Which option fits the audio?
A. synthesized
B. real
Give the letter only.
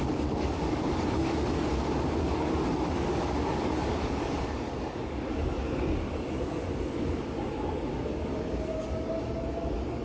A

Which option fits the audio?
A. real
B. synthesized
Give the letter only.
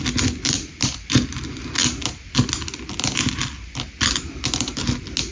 A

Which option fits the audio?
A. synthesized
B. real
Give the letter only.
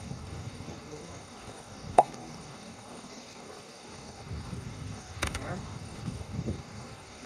A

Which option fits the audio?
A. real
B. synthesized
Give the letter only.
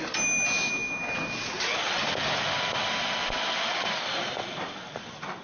A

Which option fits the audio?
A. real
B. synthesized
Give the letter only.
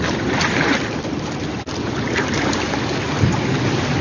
A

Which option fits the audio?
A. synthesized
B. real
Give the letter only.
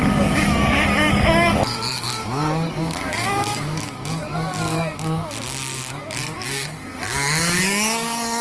A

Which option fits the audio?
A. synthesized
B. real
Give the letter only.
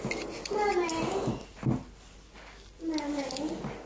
B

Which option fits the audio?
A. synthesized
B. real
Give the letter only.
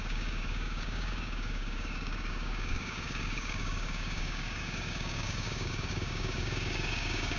A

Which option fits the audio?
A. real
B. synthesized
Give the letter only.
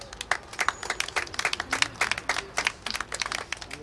A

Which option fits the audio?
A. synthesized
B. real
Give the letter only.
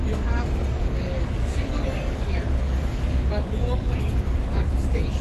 A